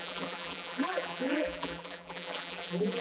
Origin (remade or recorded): remade